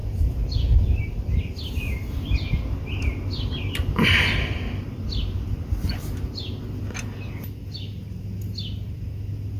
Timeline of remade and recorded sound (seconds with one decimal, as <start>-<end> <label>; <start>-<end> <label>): 0.0-9.6 recorded